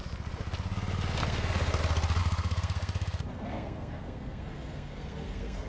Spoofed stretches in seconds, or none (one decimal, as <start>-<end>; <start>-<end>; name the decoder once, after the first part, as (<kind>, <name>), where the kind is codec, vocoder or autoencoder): 1.2-1.8 (codec, SNAC); 2.2-5.7